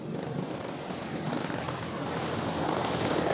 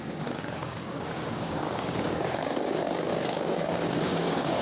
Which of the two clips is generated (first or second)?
second